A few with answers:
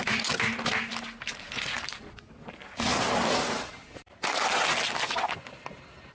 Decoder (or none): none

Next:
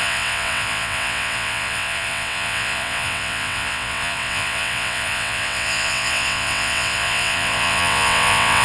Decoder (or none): vocoder, WaveNeXt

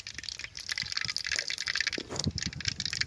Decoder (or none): none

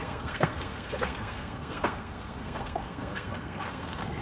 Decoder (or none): codec, SNAC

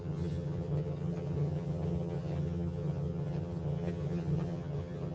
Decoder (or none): vocoder, HiFi-GAN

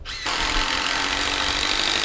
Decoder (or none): none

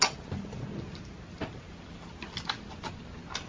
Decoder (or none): none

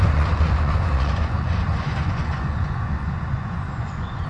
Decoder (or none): vocoder, Vocos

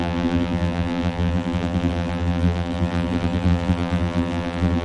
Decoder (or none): vocoder, BigVGAN v2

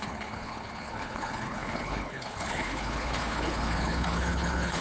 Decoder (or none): codec, HILCodec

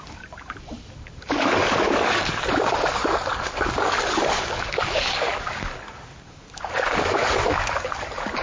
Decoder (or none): codec, DAC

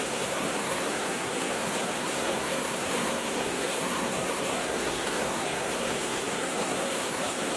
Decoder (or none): codec, SNAC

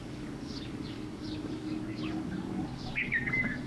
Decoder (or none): codec, DAC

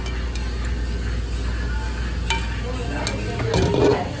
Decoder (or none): none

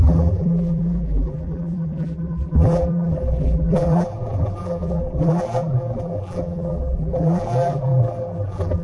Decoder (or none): vocoder, BigVGAN v2